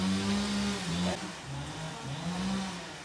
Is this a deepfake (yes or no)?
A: no